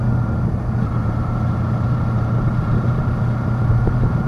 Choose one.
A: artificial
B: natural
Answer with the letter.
A